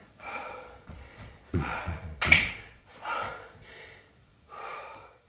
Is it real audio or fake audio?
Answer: fake